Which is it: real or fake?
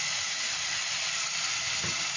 real